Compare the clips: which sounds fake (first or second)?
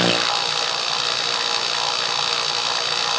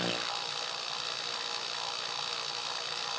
second